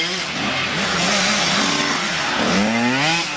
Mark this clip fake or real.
real